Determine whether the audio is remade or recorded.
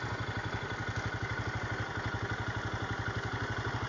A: recorded